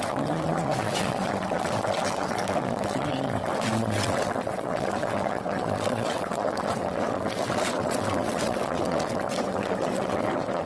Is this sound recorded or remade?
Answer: remade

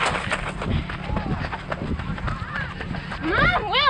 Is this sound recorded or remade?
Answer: recorded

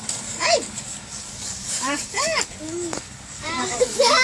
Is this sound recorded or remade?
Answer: remade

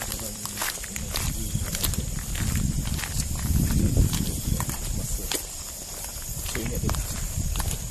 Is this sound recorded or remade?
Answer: remade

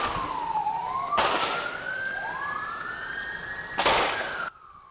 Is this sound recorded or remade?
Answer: recorded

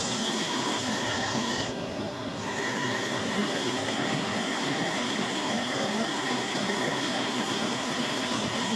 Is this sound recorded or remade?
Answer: remade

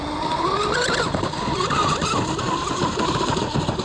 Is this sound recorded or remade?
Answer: recorded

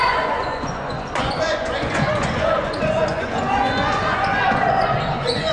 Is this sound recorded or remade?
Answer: remade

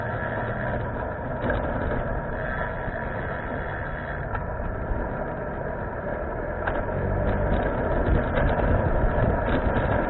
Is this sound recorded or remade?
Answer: recorded